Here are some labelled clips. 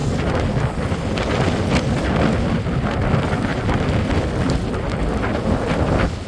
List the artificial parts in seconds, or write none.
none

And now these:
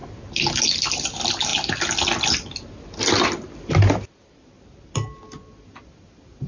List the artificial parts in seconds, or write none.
none

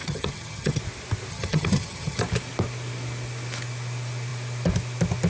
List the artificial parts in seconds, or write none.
0.0-0.8 (vocoder, HiFi-GAN); 1.3-2.2

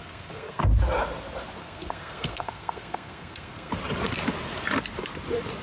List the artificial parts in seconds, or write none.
0.0-0.6 (codec, SNAC); 1.6-3.7

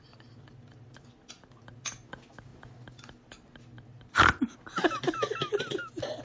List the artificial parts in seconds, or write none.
none

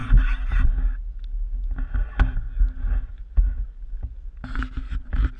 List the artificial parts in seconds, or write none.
none

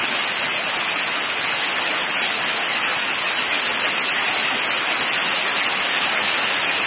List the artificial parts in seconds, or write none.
none

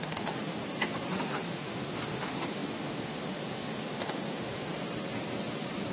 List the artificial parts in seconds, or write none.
0.0-0.6 (autoencoder, DAC-VAE); 1.1-4.7